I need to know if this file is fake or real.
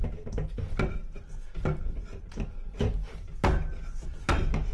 real